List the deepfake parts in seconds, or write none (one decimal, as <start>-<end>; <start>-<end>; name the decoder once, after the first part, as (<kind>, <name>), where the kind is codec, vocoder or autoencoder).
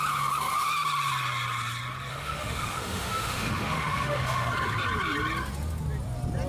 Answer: 2.1-4.5 (autoencoder, DAC-VAE)